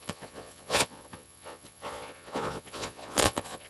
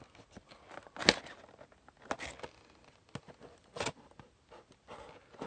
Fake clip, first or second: first